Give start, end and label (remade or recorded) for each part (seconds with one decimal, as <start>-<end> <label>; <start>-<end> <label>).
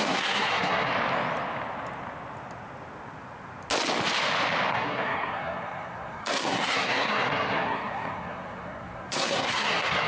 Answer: 0.0-0.9 remade; 0.9-4.7 recorded; 4.7-10.1 remade